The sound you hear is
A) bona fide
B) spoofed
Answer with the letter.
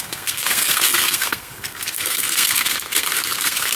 B